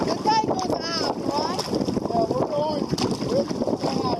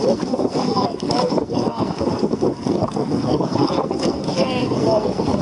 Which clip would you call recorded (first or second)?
first